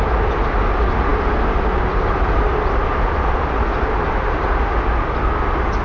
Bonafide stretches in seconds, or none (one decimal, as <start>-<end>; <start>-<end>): 0.0-5.8